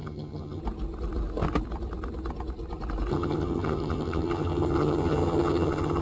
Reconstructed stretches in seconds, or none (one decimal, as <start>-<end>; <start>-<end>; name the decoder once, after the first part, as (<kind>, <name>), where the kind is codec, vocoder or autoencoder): 0.0-0.6 (vocoder, HiFi-GAN); 3.1-6.0